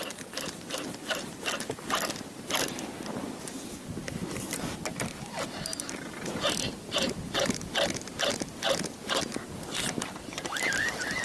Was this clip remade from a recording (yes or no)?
no